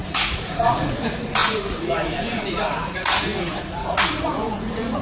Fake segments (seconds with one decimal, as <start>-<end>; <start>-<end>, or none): 0.0-5.0